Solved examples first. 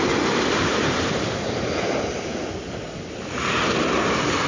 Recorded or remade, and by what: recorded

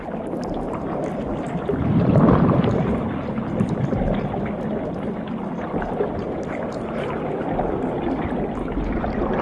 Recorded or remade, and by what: recorded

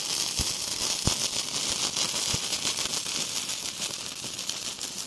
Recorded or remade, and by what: recorded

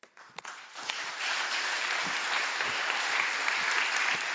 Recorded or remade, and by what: remade, vocoder, BigVGAN v2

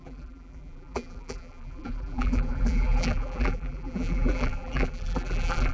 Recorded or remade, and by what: remade, vocoder, BigVGAN v2